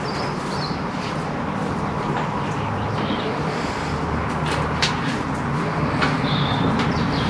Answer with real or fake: real